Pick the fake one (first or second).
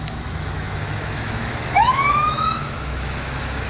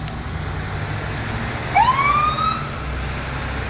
first